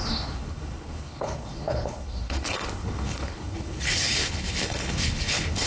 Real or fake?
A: fake